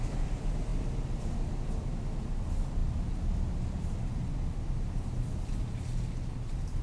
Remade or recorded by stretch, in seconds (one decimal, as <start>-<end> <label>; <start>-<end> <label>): 0.0-6.8 recorded